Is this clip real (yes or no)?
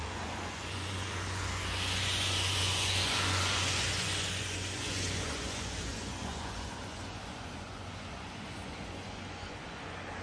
no